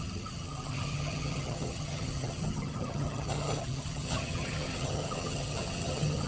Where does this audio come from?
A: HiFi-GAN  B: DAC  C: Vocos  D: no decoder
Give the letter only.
A